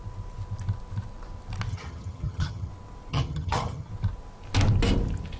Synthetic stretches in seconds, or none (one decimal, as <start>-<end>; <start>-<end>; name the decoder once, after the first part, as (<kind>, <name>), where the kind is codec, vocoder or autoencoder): 1.7-2.7 (vocoder, HiFi-GAN); 3.1-3.9